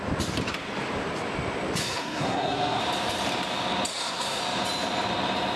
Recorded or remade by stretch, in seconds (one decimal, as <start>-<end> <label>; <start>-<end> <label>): 0.0-1.8 recorded; 1.8-2.8 remade; 2.8-3.9 recorded; 3.9-4.4 remade; 4.4-5.6 recorded